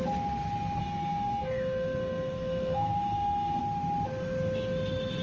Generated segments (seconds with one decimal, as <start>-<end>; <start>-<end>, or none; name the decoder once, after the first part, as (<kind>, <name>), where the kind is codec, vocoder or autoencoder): 0.8-3.6 (codec, SNAC)